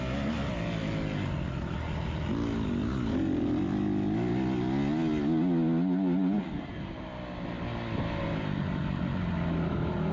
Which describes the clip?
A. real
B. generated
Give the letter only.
A